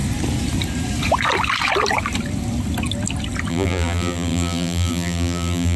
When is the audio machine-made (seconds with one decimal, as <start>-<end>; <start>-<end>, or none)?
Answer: 3.5-5.8